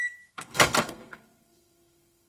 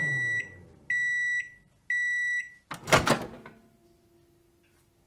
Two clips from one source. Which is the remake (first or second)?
first